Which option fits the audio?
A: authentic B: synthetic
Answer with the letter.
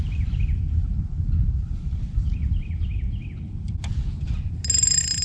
A